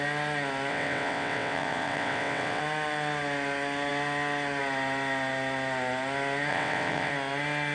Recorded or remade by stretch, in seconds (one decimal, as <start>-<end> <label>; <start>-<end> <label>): 0.0-0.7 recorded; 0.7-2.6 remade; 2.6-6.5 recorded; 6.5-7.1 remade; 7.1-7.7 recorded